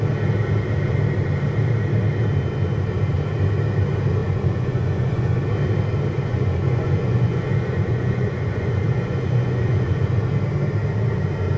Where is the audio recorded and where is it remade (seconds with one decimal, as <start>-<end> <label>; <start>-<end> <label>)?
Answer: 0.0-4.2 recorded; 4.2-5.4 remade; 5.4-6.3 recorded; 6.3-10.3 remade; 10.3-11.6 recorded